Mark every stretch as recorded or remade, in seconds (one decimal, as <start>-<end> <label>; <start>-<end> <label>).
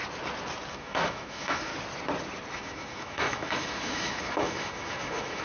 0.0-0.7 recorded; 0.7-1.7 remade; 1.7-2.5 recorded; 2.5-5.4 remade